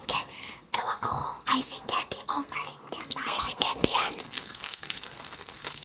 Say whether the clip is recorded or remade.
remade